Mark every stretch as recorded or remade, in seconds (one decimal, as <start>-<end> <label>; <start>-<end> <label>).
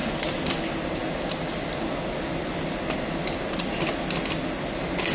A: 0.0-5.1 recorded